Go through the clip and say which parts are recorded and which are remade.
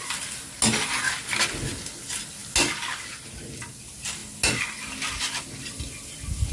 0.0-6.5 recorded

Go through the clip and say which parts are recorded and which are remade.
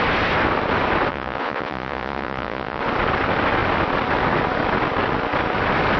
0.0-1.1 recorded; 1.1-2.8 remade; 2.8-6.0 recorded